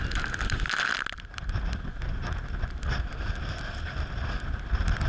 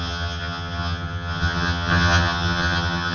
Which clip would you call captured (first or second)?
first